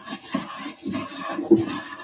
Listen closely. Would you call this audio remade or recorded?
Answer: recorded